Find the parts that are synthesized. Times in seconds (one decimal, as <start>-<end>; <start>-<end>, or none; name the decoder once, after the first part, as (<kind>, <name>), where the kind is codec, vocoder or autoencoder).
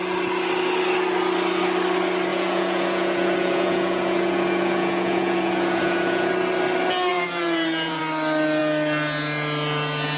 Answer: 2.3-6.3 (vocoder, Vocos); 7.1-8.0